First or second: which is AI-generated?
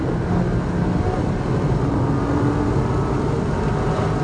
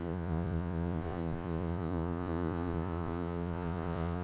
second